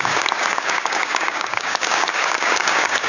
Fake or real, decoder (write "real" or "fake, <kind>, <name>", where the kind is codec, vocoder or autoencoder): fake, codec, DAC